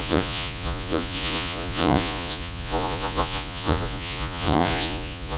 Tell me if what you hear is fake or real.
fake